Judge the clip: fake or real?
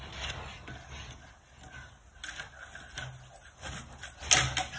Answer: real